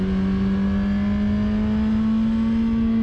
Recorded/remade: recorded